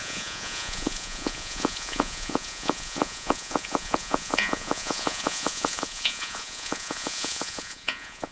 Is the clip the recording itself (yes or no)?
no